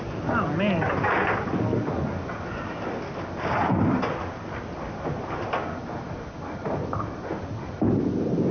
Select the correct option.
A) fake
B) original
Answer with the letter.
B